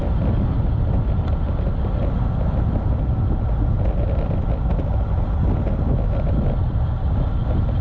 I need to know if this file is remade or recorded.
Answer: recorded